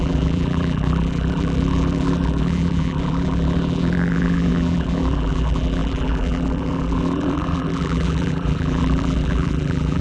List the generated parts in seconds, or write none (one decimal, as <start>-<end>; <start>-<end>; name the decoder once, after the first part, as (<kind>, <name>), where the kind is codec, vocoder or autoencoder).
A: 0.0-10.0 (vocoder, BigVGAN v2)